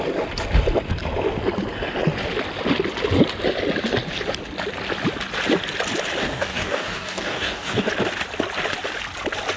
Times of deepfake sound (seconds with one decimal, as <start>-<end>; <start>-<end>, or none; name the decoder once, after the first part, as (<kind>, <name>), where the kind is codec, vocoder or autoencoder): 6.2-7.9 (codec, DAC)